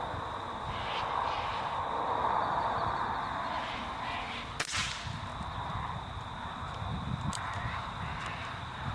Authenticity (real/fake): real